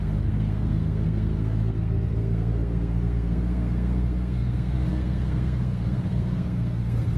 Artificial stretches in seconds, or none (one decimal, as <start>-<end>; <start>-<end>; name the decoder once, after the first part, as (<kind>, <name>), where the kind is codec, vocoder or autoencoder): 0.0-7.2 (codec, SNAC)

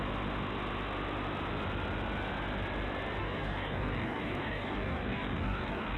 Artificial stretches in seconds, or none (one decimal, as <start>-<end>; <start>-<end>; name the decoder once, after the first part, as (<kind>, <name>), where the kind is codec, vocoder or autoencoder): 3.2-6.0 (codec, DAC)